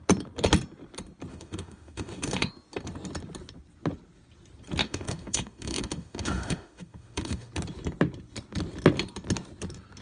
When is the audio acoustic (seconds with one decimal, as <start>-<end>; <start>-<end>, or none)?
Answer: 0.0-1.3; 2.5-4.8; 7.5-10.0